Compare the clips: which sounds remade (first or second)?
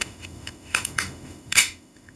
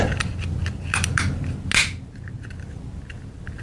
first